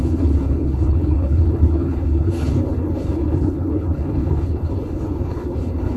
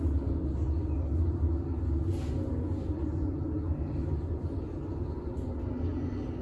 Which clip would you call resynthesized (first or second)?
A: first